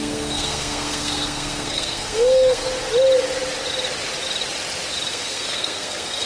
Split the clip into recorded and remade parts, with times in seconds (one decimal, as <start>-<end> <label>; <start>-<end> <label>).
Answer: 0.0-2.6 remade; 2.6-5.1 recorded; 5.1-6.3 remade